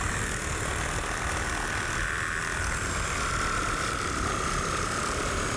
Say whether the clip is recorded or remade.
remade